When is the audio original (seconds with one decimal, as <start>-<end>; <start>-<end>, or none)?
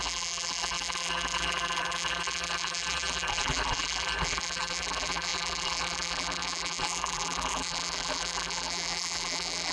none